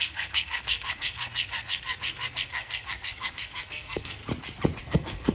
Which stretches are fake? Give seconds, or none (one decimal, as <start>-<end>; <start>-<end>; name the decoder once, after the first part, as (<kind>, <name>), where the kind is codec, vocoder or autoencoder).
0.0-4.2 (codec, SNAC); 4.8-5.3